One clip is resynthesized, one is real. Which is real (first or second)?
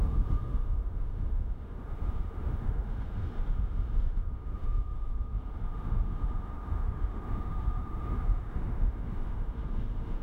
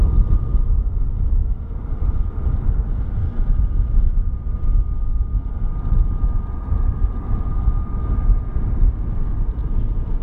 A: second